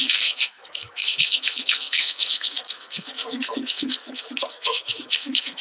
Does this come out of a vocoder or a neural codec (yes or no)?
yes